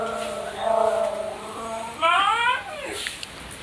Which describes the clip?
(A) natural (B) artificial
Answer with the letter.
A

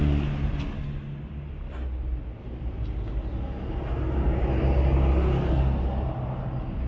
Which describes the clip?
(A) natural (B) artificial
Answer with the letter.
A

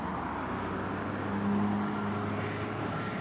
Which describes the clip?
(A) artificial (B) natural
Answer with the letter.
B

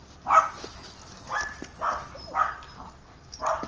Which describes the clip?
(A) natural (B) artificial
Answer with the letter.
A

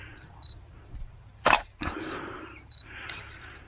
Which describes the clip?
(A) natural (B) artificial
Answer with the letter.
B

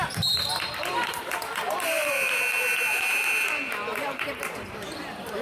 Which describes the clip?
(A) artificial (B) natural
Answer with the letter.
A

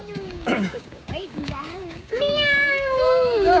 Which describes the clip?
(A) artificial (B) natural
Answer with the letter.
A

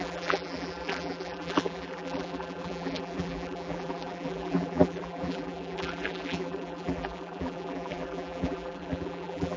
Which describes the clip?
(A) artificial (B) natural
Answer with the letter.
A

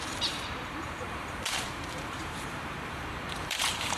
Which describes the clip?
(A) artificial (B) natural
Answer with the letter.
A